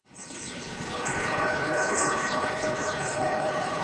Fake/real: fake